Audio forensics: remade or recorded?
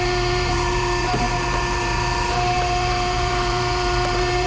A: remade